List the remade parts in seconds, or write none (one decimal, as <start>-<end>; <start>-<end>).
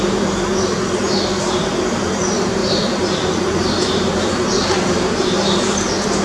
0.0-0.5; 1.4-6.2